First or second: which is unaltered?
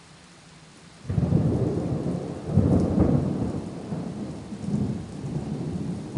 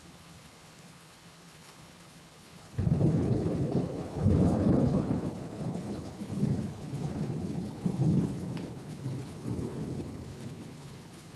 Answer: first